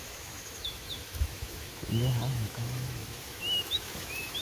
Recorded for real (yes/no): no